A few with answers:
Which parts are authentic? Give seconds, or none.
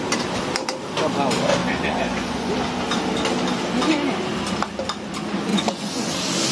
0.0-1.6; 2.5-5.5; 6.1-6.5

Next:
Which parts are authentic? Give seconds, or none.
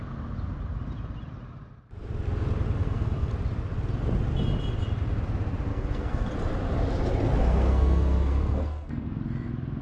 0.0-2.8; 3.3-5.7; 6.3-7.4; 9.2-9.8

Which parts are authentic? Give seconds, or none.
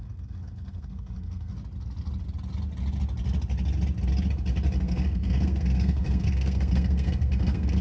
1.5-4.8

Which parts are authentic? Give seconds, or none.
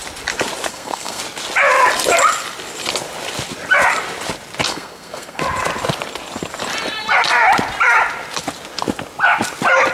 0.0-0.7; 1.2-4.7; 5.4-9.9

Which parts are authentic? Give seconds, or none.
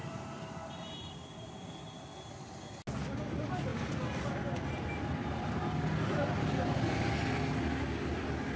1.6-8.6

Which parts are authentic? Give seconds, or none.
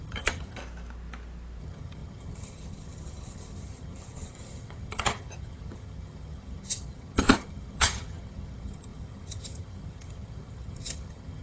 0.6-1.6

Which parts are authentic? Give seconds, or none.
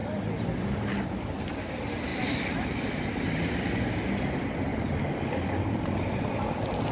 0.0-6.9